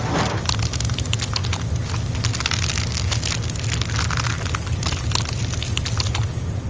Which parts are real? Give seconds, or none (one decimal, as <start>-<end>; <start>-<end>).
0.0-6.7